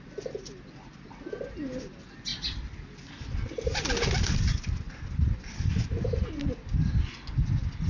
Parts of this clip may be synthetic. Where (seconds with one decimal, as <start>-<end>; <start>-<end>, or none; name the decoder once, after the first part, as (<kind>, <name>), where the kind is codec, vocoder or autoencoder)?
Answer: none